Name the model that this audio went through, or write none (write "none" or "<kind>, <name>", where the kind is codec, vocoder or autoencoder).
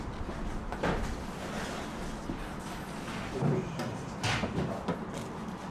none